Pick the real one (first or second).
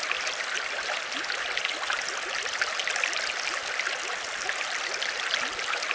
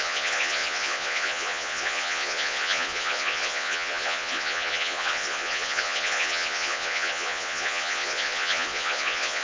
first